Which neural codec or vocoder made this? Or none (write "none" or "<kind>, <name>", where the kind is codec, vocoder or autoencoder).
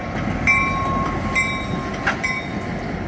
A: none